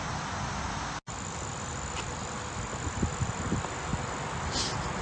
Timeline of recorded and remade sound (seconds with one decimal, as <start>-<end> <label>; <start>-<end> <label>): 0.0-5.0 recorded